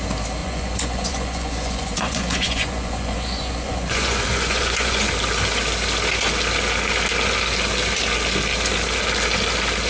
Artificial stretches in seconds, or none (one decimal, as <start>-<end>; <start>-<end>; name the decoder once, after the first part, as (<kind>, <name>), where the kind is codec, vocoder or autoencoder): 0.4-5.1 (vocoder, Vocos)